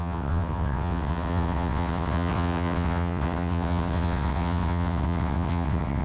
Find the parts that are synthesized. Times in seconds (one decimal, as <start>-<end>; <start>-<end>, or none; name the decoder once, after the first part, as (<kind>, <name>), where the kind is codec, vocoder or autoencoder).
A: 0.0-6.0 (vocoder, WaveNeXt)